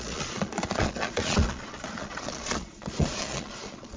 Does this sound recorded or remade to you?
remade